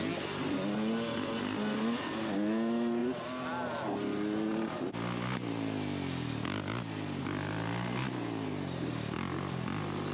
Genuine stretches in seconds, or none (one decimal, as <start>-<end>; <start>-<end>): 0.0-10.1